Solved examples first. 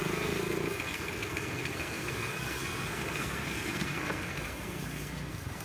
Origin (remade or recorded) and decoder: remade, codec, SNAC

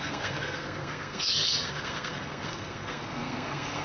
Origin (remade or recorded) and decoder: remade, codec, SNAC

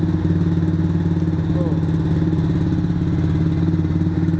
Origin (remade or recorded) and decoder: recorded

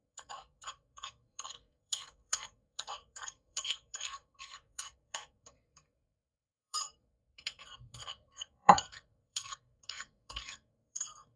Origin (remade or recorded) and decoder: remade, codec, SNAC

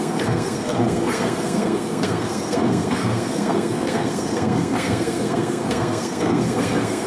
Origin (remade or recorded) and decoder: remade, codec, SNAC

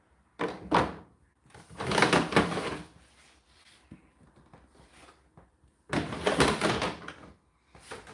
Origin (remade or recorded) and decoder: recorded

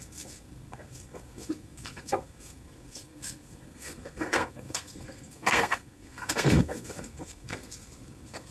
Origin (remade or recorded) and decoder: remade, codec, SNAC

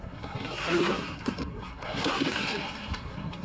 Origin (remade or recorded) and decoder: remade, codec, SNAC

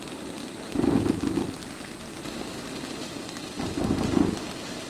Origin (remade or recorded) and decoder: recorded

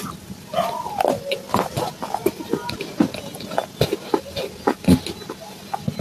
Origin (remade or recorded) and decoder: recorded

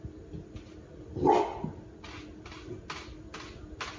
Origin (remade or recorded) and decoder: recorded